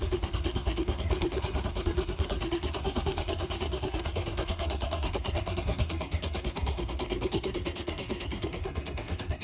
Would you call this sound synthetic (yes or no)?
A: yes